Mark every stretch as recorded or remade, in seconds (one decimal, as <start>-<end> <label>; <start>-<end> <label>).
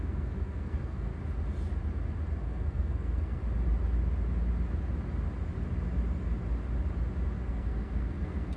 0.0-1.1 remade; 1.1-2.4 recorded; 2.4-3.4 remade; 3.4-7.5 recorded; 7.5-8.6 remade